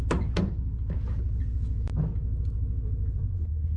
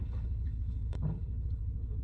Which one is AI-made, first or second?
second